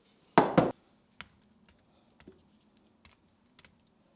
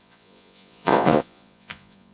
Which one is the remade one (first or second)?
second